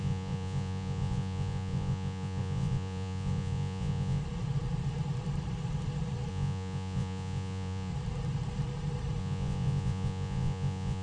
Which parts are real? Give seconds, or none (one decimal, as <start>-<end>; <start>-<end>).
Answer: 4.2-6.3; 7.9-9.2